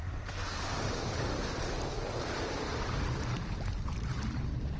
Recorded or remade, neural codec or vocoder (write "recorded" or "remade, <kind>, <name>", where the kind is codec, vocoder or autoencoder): remade, vocoder, BigVGAN v2